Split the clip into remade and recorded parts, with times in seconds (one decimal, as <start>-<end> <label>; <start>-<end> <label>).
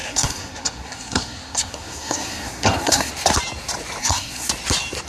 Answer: 0.0-3.1 remade; 3.1-4.0 recorded; 4.0-4.5 remade; 4.5-5.1 recorded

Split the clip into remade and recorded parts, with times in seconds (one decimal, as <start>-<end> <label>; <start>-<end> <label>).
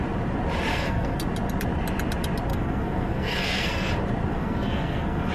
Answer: 0.0-0.7 recorded; 0.7-1.2 remade; 1.2-2.5 recorded; 2.5-3.9 remade; 3.9-4.3 recorded; 4.3-5.3 remade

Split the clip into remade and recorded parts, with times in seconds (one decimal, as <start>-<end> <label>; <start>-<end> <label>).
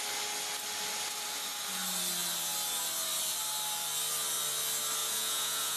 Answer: 0.0-5.0 recorded; 5.0-5.8 remade